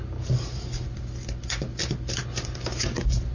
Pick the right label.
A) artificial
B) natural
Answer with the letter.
B